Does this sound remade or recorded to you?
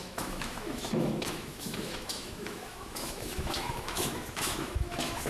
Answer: remade